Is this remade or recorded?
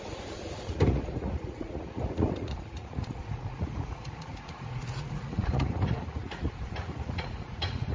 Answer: remade